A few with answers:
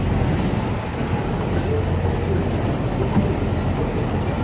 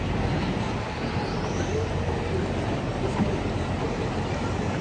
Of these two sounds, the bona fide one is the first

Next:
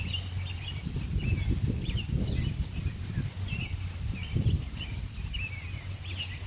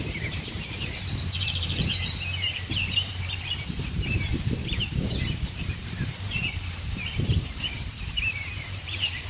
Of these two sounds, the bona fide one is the first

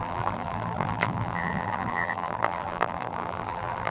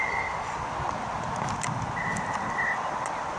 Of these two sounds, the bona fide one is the second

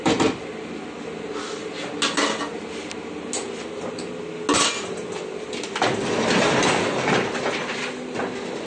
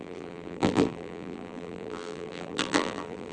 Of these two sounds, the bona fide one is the first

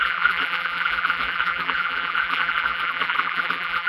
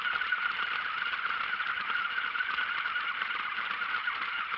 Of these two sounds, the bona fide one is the second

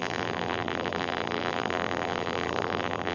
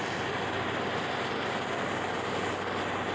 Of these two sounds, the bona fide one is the second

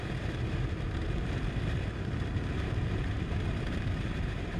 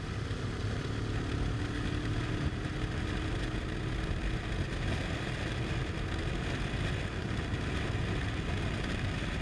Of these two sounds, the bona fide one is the second